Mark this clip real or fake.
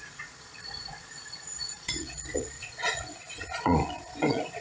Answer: fake